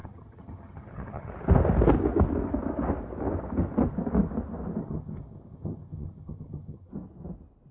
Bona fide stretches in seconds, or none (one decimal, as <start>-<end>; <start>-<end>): 1.3-4.8; 6.9-7.7